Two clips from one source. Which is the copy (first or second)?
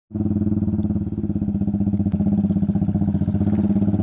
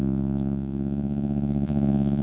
second